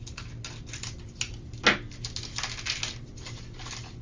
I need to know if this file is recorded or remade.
recorded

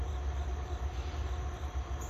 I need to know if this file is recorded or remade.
recorded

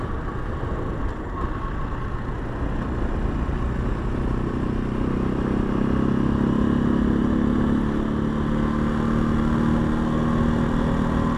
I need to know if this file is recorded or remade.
recorded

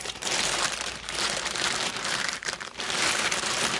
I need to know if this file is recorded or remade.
remade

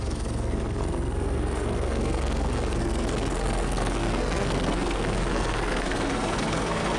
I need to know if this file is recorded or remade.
remade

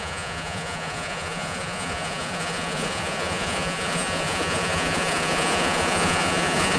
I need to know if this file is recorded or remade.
remade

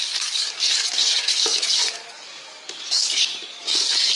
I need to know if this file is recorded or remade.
remade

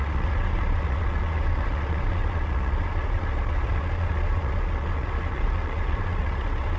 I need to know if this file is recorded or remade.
remade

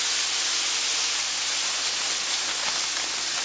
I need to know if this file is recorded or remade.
recorded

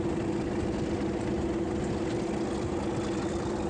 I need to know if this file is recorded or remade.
recorded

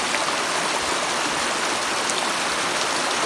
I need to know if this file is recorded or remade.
recorded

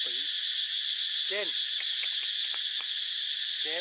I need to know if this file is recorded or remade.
recorded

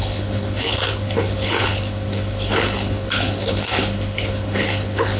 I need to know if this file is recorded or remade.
remade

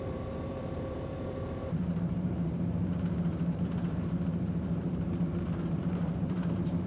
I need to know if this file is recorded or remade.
remade